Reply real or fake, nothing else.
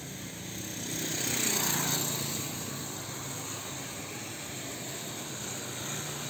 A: real